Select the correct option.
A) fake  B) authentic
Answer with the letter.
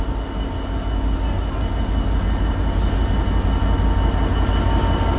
B